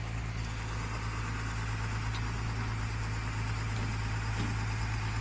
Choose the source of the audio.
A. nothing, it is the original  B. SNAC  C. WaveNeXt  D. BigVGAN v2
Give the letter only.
A